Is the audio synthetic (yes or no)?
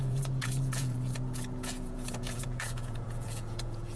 yes